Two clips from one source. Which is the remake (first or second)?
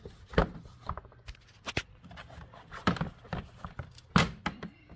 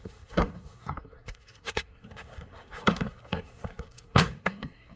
second